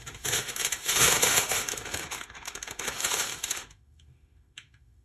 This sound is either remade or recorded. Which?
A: remade